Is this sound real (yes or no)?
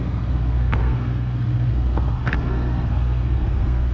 no